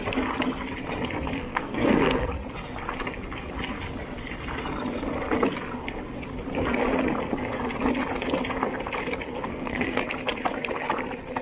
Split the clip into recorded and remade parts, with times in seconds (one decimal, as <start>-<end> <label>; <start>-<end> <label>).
0.0-1.4 recorded; 1.4-2.3 remade; 2.3-9.3 recorded; 9.3-10.0 remade; 10.0-11.4 recorded